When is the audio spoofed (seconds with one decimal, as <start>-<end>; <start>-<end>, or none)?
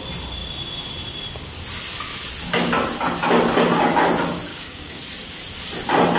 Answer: 4.5-5.0